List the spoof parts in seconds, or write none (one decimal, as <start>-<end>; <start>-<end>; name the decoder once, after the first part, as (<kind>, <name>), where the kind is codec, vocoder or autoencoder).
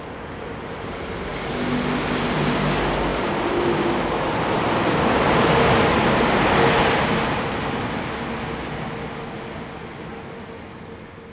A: none